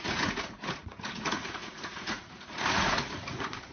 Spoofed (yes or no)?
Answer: yes